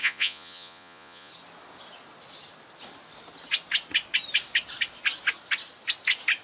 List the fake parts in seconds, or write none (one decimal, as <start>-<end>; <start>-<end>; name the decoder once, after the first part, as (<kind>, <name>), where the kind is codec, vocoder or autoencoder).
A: 0.0-1.3 (vocoder, Vocos)

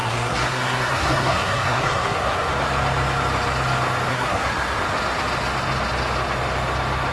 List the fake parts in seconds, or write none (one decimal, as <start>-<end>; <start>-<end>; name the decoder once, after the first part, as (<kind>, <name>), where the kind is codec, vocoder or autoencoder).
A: 0.0-2.5 (codec, SNAC); 4.1-4.8

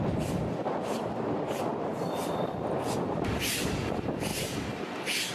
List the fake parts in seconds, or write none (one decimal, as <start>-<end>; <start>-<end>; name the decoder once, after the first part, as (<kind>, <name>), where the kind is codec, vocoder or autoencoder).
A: 0.6-3.4 (vocoder, BigVGAN v2)

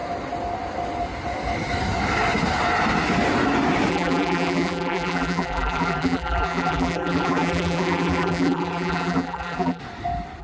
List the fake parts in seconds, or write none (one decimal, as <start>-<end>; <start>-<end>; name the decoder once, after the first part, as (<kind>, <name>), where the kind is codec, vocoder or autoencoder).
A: 3.9-9.8 (vocoder, BigVGAN v2)

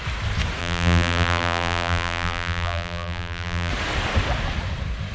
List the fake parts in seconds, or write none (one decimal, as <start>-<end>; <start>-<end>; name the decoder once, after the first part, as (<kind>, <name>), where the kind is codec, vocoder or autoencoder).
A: 0.6-3.7 (vocoder, BigVGAN v2)